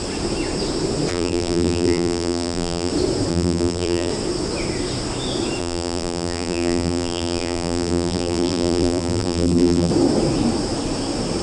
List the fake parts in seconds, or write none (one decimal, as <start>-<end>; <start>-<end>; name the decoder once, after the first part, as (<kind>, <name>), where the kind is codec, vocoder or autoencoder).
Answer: 1.1-2.9 (vocoder, BigVGAN v2); 3.3-4.1; 5.6-9.9